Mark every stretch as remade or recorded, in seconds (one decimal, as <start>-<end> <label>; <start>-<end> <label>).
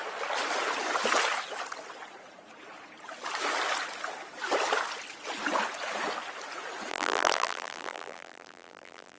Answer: 0.0-6.9 recorded; 6.9-9.2 remade